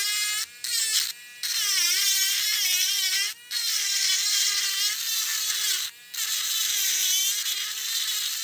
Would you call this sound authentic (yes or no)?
yes